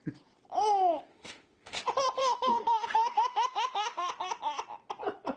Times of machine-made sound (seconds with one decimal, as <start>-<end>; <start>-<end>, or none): 1.1-1.8; 2.2-4.1